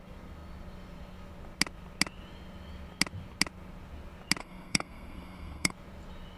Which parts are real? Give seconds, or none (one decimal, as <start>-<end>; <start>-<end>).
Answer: 0.0-4.4; 5.7-6.4